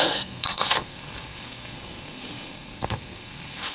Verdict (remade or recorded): remade